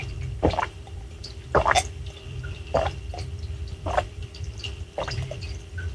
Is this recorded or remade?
remade